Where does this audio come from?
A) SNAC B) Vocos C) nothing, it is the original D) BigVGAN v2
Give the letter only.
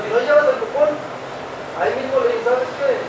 C